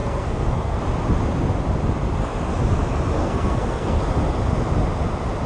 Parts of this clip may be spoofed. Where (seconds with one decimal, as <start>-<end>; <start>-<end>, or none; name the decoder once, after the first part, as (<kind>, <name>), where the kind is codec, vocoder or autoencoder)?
0.0-0.8 (codec, SNAC); 3.2-4.0